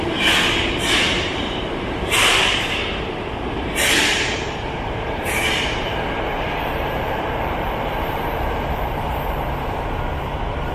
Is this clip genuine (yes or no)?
no